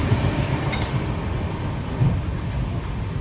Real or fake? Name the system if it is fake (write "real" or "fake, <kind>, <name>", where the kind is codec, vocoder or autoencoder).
real